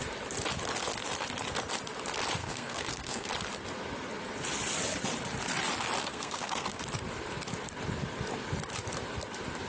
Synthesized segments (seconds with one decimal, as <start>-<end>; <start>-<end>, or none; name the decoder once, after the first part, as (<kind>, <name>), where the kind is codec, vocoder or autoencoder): 2.4-3.3 (codec, SNAC); 6.0-6.8